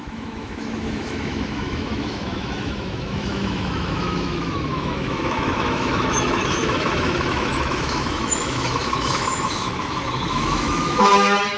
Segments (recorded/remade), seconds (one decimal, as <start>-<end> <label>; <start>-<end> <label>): 0.0-11.6 remade